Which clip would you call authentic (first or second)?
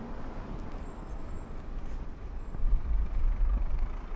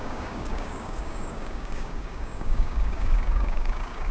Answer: first